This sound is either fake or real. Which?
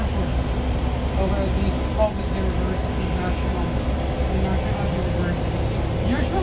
real